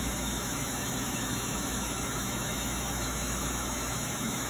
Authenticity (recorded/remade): remade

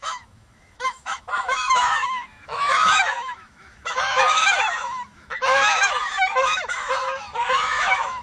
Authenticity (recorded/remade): remade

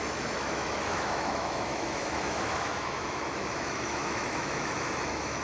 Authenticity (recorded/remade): remade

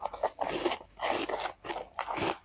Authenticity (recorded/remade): recorded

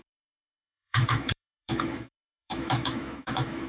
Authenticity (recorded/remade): remade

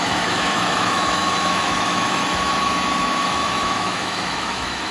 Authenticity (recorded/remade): remade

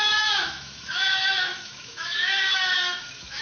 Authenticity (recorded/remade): remade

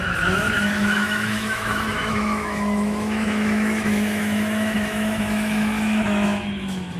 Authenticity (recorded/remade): remade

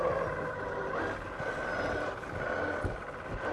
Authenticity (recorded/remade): recorded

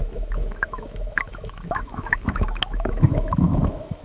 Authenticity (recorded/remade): remade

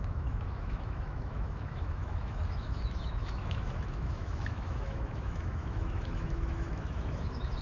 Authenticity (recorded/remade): remade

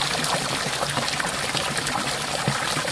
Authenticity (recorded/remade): recorded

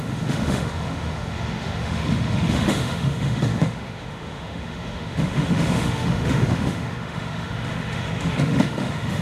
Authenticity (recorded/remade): remade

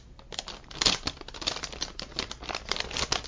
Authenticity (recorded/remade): recorded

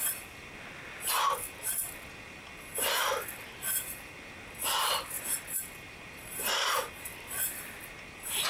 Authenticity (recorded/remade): recorded